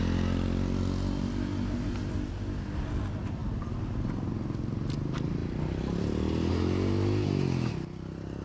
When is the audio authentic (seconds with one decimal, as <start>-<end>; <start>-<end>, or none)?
0.0-8.4